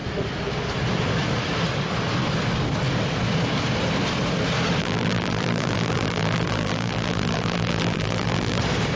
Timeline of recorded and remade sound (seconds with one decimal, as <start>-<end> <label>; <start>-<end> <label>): 0.0-4.8 recorded; 4.8-8.6 remade; 8.6-9.0 recorded